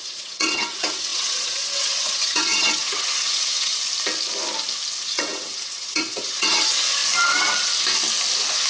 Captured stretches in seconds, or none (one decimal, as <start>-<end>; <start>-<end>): 3.7-5.0; 7.0-8.7